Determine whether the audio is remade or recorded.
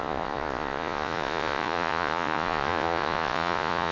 remade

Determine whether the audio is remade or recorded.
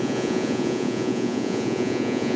remade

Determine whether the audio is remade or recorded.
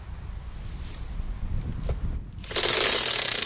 recorded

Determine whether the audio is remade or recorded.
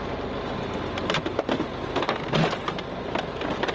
recorded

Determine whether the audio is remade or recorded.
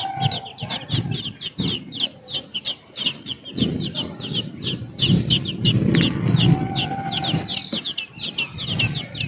recorded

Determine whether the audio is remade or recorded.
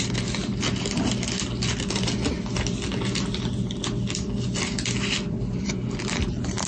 recorded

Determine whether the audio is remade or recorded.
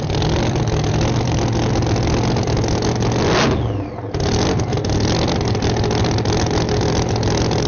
recorded